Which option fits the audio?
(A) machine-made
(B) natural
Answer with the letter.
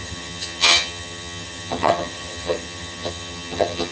A